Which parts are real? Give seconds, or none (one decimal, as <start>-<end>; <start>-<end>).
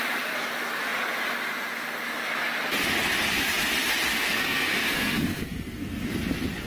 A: 0.0-4.1; 6.1-6.7